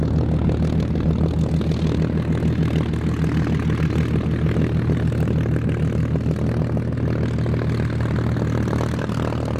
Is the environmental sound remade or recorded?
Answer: recorded